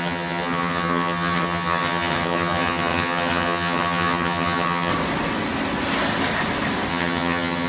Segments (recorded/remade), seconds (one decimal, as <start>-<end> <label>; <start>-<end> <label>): 0.0-4.9 remade; 4.9-6.9 recorded; 6.9-7.7 remade